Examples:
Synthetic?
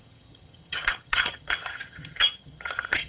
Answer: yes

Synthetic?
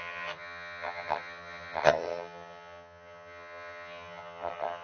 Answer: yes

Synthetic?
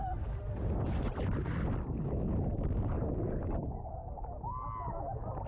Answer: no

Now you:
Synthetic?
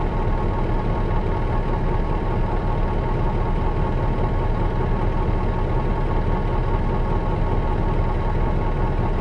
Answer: no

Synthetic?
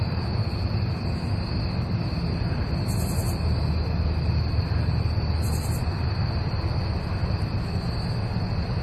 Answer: no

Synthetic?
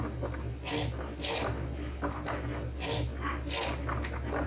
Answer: no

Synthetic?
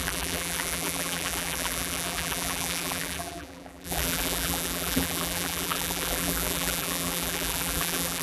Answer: yes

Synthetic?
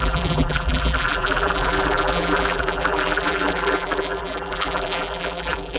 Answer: yes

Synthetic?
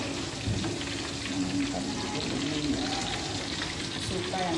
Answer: no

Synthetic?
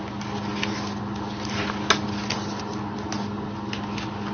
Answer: no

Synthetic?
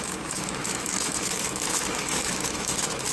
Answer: yes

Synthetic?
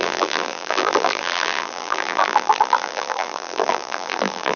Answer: yes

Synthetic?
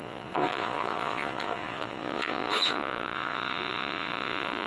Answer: yes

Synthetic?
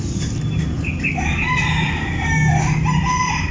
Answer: no